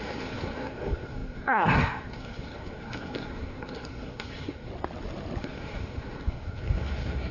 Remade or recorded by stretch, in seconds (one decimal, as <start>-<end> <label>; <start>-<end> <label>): 0.0-4.7 remade; 4.7-5.4 recorded; 5.4-7.3 remade